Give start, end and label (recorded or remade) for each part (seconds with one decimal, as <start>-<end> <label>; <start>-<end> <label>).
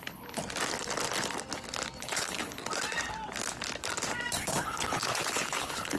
0.0-0.4 remade; 0.4-2.0 recorded; 2.0-2.6 remade; 2.6-4.4 recorded; 4.4-6.0 remade